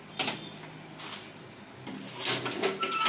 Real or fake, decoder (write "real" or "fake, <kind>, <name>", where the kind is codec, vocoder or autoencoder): real